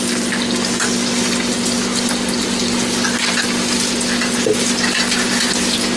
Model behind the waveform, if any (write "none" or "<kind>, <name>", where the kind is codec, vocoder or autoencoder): none